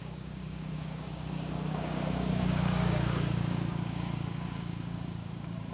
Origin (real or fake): fake